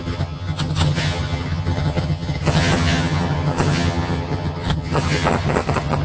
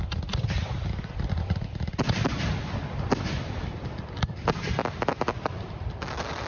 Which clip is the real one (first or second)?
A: second